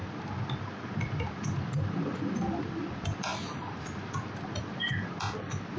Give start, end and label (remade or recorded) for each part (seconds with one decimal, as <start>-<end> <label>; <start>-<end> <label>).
0.0-5.8 recorded

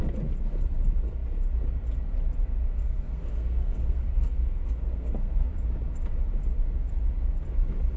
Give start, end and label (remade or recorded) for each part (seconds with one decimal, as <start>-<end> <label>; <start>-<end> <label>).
0.0-2.8 recorded; 2.8-5.5 remade; 5.5-8.0 recorded

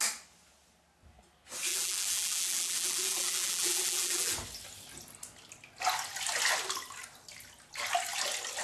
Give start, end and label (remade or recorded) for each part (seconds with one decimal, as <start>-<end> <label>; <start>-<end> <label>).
0.0-1.7 recorded; 1.7-4.3 remade; 4.3-8.6 recorded

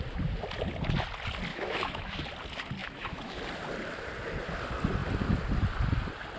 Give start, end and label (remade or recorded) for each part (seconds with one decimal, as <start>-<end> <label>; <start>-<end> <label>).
0.0-1.5 recorded; 1.5-2.2 remade; 2.2-2.8 recorded; 2.8-3.4 remade; 3.4-6.4 recorded

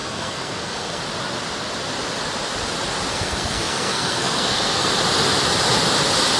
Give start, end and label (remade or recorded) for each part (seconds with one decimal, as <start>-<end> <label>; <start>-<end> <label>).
0.0-1.0 remade; 1.0-3.1 recorded; 3.1-4.9 remade; 4.9-6.4 recorded

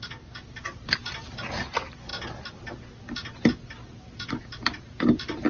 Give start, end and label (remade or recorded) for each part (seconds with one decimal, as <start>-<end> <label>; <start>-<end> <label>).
0.0-5.5 recorded

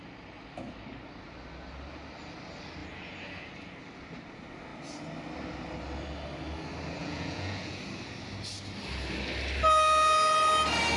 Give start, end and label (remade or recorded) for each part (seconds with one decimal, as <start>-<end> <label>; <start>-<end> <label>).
0.0-7.0 recorded; 7.0-7.8 remade; 7.8-11.0 recorded